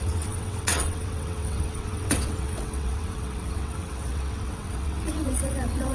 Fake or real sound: fake